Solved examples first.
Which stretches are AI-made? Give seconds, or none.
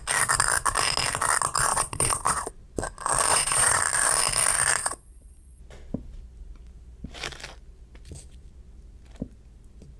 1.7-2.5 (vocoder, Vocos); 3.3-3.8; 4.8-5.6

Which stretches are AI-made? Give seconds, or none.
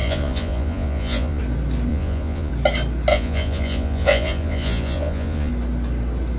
0.0-1.4 (vocoder, Vocos); 1.9-2.5; 3.1-5.5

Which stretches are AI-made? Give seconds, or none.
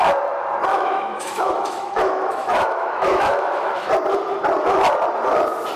0.7-3.9 (autoencoder, DAC-VAE)